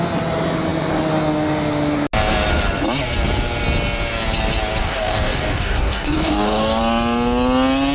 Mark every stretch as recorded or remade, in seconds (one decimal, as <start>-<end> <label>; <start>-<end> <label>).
0.0-4.8 recorded; 4.8-6.8 remade; 6.8-7.9 recorded